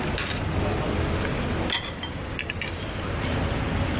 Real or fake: real